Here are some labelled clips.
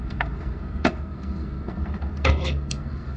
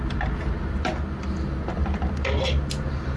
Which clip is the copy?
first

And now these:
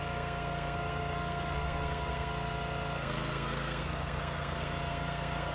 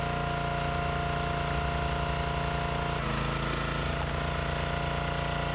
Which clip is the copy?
first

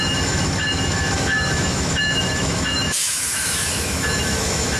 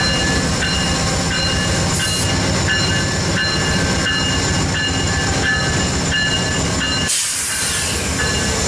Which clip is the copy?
first